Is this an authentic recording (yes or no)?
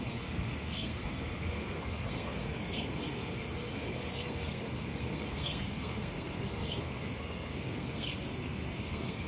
no